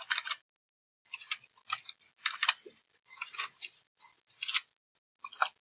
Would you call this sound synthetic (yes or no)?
no